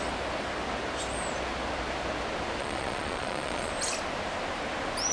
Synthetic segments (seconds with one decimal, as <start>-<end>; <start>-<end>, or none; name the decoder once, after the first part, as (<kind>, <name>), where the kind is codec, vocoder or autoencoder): 2.6-3.7 (vocoder, Vocos)